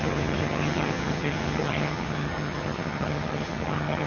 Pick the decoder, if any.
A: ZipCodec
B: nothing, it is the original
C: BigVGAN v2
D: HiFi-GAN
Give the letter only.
D